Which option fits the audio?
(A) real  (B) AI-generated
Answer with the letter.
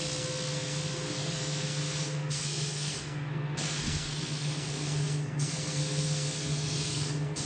B